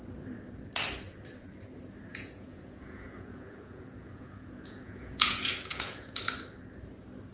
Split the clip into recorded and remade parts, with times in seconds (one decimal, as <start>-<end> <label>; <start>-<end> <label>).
0.0-2.1 recorded; 2.1-6.2 remade; 6.2-7.3 recorded